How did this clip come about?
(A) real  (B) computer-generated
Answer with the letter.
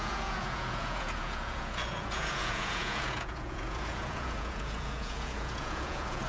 B